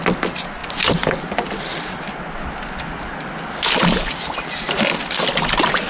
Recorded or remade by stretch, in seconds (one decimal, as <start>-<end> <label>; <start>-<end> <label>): 0.0-5.9 recorded